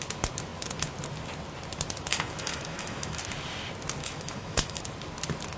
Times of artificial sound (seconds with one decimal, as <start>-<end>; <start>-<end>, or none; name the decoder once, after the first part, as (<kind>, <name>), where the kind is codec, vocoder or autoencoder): 2.1-3.2 (autoencoder, DAC-VAE); 4.0-4.8